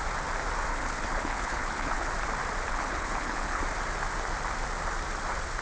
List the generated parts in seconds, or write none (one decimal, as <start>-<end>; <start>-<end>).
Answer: 0.7-2.1; 2.7-3.6